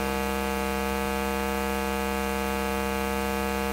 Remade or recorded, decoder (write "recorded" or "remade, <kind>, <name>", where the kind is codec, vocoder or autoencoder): recorded